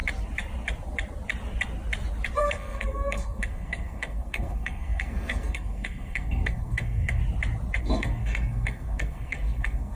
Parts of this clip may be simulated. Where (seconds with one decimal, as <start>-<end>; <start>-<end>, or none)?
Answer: 2.4-7.2; 7.8-10.0